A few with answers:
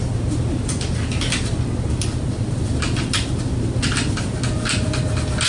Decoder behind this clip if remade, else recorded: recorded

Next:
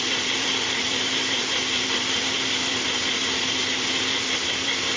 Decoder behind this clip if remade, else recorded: remade, vocoder, BigVGAN v2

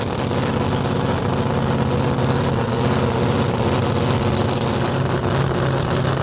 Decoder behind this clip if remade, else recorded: recorded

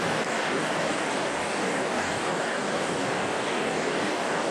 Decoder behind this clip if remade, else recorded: remade, codec, DAC